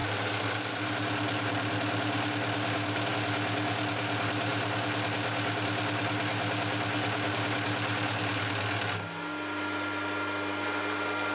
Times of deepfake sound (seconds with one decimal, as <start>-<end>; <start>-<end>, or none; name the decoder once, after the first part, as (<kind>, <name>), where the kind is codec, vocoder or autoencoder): none